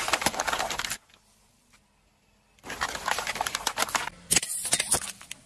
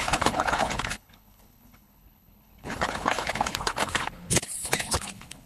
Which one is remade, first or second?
second